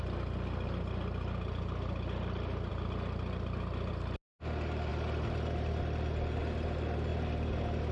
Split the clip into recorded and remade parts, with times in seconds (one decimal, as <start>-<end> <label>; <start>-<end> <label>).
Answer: 0.0-7.9 recorded

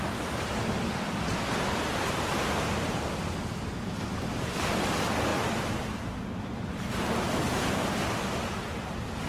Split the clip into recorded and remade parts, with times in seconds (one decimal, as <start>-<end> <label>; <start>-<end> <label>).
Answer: 0.0-1.9 recorded; 1.9-4.2 remade; 4.2-9.3 recorded

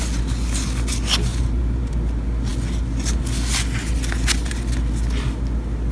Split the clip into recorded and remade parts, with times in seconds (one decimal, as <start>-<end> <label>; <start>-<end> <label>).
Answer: 0.0-1.3 recorded; 1.3-1.9 remade; 1.9-5.9 recorded